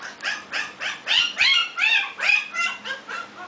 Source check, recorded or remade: remade